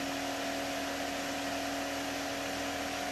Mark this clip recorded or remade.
recorded